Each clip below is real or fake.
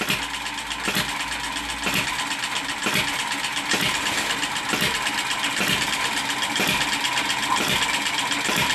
real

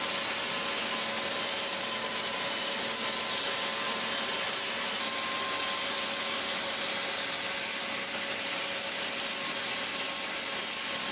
real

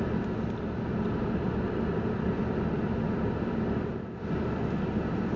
real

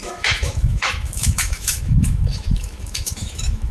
fake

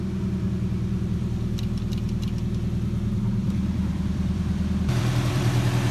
fake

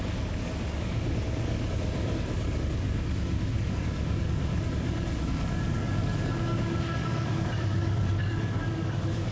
fake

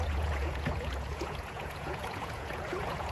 fake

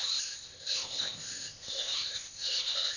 fake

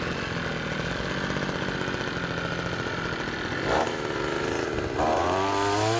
real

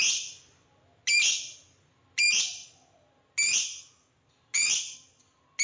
real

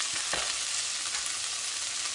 real